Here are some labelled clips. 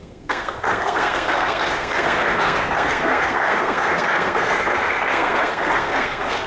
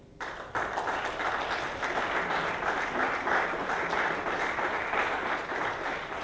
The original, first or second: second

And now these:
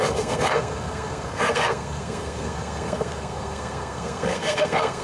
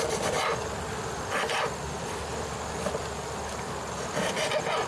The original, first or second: second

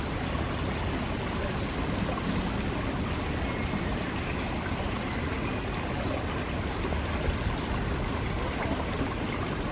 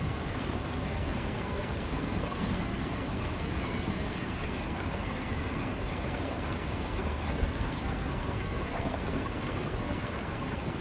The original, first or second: first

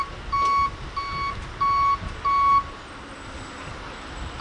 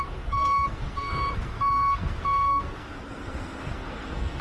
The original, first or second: first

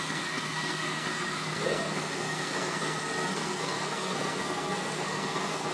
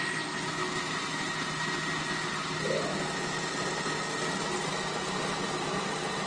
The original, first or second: second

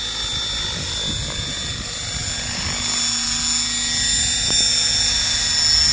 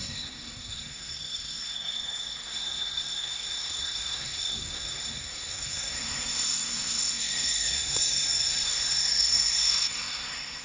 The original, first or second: first